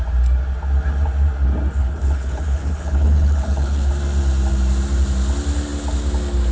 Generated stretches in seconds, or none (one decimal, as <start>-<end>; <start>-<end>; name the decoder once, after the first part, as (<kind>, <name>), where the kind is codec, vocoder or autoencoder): 1.8-3.9 (codec, HILCodec)